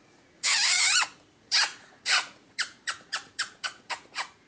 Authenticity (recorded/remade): remade